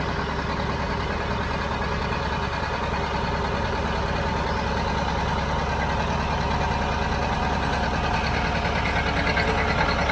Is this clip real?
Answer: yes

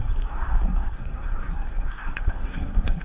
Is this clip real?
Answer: no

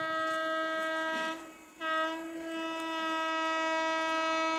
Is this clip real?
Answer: yes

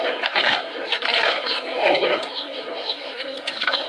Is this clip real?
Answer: no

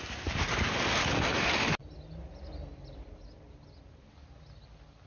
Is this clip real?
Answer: yes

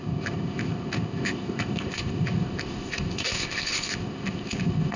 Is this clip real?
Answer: no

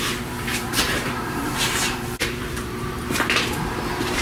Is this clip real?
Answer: no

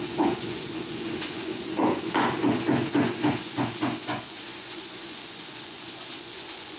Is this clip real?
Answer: no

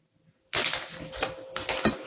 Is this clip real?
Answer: yes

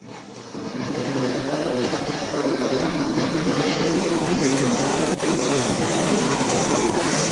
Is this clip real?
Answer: no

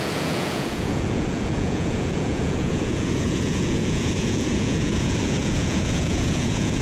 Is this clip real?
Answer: no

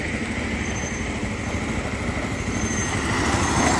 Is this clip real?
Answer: yes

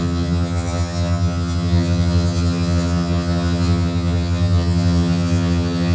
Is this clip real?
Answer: no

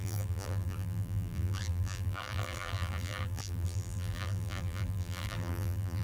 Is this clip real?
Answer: no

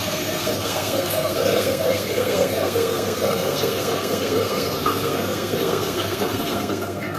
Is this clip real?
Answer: no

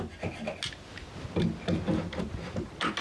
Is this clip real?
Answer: yes